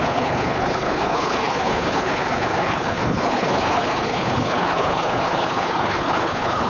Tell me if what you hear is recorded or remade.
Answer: remade